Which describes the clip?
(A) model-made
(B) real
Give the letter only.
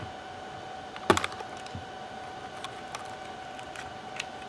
B